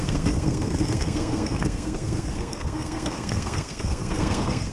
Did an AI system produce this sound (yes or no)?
yes